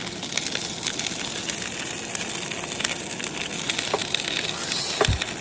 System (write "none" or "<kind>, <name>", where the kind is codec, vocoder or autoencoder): none